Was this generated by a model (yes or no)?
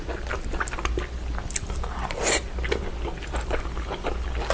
no